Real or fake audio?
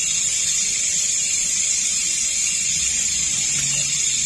real